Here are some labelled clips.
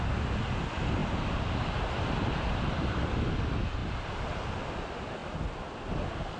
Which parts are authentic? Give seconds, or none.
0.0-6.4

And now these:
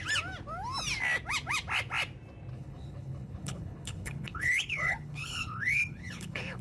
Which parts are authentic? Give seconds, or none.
0.0-2.5

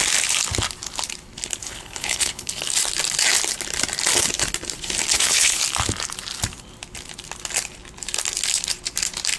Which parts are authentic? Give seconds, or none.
0.0-1.6; 2.6-5.1; 5.6-9.4

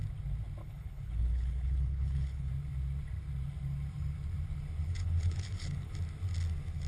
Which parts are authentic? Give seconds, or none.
0.0-0.6; 2.5-4.8; 5.9-6.9

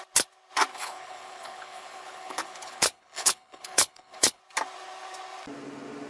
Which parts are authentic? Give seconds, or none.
0.0-0.7; 4.4-6.1

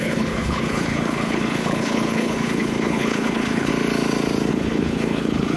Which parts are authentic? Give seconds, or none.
3.7-4.5

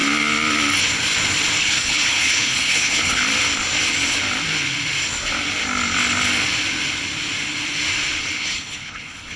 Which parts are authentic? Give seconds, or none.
0.0-1.6; 3.2-8.4